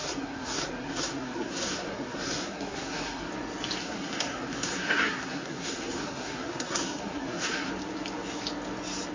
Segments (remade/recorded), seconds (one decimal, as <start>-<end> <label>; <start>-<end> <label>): 0.0-3.3 remade; 3.3-3.8 recorded; 3.8-7.7 remade; 7.7-9.1 recorded